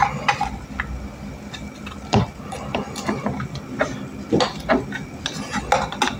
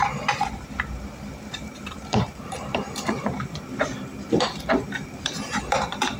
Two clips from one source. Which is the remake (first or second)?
second